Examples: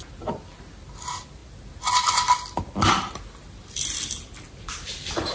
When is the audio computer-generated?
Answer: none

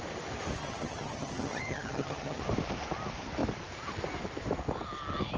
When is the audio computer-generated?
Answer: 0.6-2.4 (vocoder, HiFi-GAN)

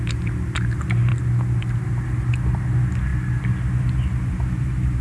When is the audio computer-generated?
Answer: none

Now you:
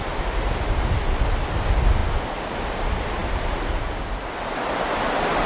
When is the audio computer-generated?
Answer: none

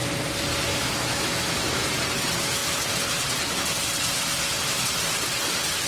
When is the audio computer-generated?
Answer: 0.7-1.9 (autoencoder, DAC-VAE)

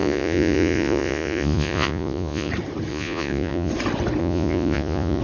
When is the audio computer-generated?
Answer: 0.0-2.5 (vocoder, Vocos); 2.9-3.7; 4.2-5.2

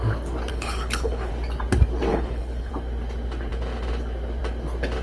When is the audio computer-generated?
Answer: 0.5-1.3 (codec, HILCodec); 2.1-2.7